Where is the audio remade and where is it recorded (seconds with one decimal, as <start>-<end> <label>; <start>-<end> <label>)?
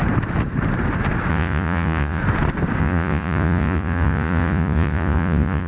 0.0-1.3 recorded; 1.3-2.2 remade; 2.2-2.8 recorded; 2.8-5.7 remade